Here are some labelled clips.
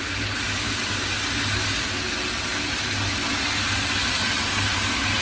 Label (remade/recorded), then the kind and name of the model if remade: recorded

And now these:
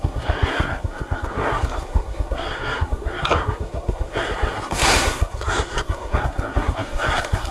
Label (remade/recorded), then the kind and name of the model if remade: remade, codec, SNAC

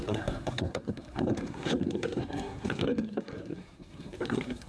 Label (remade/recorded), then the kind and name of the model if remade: remade, codec, SNAC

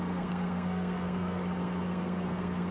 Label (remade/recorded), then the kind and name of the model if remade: remade, codec, SNAC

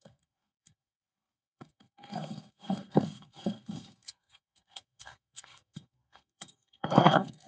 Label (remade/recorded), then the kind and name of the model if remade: remade, codec, SNAC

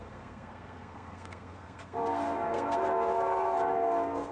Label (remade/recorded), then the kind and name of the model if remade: remade, codec, SNAC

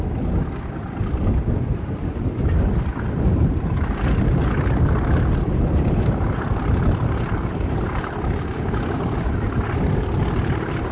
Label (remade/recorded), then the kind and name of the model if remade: recorded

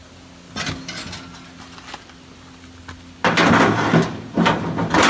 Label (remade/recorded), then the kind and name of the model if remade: recorded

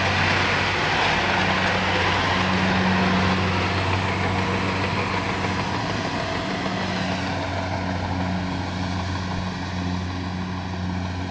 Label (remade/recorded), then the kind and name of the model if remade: recorded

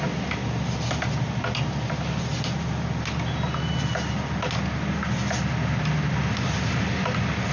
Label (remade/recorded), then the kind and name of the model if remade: recorded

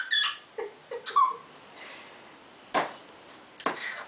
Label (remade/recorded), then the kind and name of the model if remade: recorded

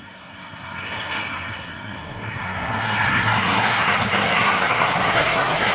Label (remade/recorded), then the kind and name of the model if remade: remade, codec, SNAC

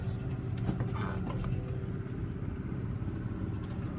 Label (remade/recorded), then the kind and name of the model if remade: recorded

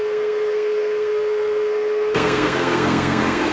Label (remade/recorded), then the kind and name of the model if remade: remade, codec, SNAC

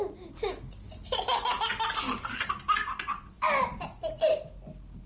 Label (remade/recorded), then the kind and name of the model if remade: recorded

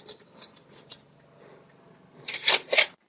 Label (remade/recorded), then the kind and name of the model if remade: recorded